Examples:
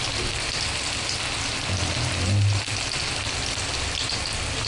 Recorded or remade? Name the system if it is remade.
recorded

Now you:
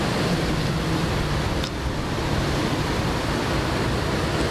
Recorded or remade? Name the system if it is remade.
recorded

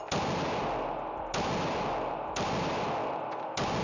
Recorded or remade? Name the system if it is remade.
recorded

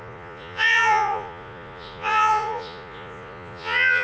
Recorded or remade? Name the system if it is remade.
remade, vocoder, Vocos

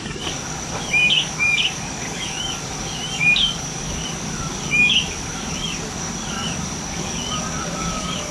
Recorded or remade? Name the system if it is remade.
remade, codec, DAC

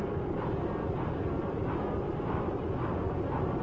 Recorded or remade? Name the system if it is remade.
recorded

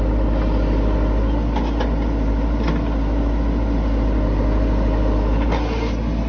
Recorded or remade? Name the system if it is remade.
recorded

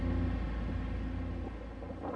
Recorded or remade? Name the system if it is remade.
recorded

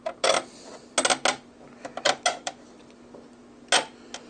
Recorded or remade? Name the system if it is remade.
recorded